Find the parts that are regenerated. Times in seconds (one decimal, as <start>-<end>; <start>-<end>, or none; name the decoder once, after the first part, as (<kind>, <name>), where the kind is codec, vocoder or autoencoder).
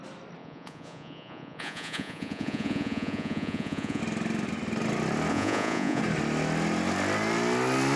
0.4-4.0 (vocoder, Vocos); 5.3-6.0